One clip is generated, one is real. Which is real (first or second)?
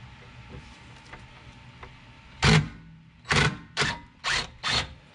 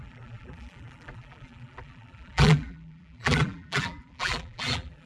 first